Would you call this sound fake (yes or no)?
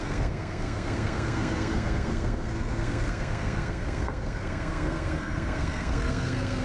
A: yes